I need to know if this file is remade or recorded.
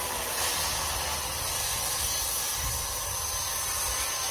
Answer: recorded